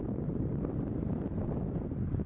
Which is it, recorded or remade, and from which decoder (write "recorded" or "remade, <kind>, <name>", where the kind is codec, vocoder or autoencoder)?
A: recorded